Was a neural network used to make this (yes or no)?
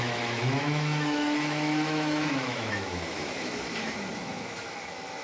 yes